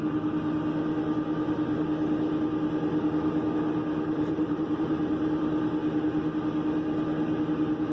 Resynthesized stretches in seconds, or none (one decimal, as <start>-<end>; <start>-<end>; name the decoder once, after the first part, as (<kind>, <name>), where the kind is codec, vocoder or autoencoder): 4.1-5.4 (vocoder, BigVGAN v2)